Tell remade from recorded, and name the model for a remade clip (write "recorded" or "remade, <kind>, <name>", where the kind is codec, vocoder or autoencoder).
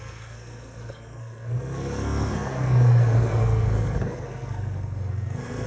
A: remade, codec, SNAC